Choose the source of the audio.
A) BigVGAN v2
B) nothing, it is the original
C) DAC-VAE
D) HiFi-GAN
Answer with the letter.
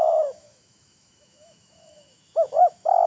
C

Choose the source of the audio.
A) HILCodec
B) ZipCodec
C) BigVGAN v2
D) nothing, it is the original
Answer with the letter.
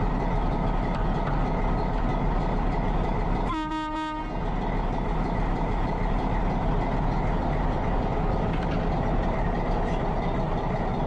D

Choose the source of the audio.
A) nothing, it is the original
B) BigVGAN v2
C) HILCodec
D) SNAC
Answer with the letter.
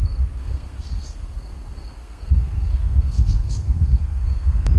D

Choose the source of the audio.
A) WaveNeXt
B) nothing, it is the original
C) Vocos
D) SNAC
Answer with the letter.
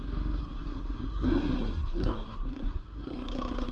D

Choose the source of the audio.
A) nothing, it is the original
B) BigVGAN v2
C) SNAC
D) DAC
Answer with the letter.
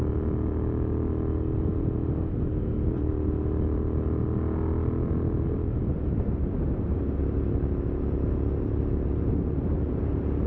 A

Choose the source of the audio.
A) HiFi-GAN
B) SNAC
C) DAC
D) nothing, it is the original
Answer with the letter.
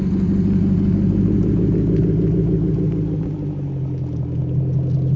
D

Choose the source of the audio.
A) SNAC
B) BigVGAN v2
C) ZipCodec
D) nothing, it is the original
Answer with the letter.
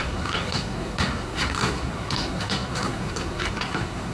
A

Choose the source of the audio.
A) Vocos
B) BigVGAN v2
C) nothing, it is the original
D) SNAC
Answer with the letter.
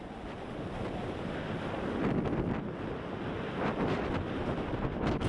C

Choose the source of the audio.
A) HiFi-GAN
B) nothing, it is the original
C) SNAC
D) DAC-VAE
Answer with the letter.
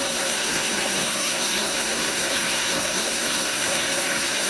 C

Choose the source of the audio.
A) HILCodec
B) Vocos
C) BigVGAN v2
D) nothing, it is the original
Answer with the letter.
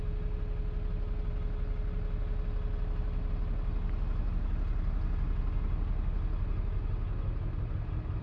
D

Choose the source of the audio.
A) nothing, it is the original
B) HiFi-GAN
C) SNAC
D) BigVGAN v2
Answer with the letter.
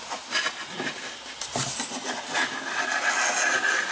A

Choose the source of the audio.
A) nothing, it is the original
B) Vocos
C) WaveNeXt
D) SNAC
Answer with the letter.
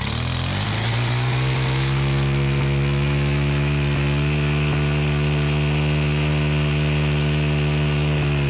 A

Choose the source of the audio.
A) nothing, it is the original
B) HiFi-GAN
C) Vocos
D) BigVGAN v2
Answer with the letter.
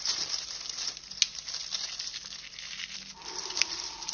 A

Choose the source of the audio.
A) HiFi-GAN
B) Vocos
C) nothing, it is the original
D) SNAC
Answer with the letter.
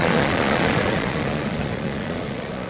B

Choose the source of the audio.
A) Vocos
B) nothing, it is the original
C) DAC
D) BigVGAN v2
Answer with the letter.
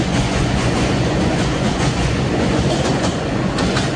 A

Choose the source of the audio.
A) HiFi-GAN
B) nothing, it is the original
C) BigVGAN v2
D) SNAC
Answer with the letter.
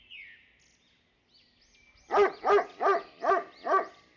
B